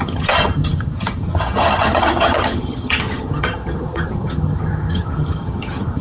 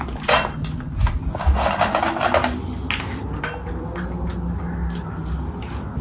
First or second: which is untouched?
second